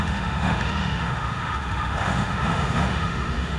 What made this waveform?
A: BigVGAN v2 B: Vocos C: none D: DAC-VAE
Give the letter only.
D